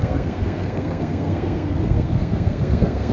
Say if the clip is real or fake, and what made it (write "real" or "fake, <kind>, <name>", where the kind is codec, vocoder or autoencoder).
fake, codec, SNAC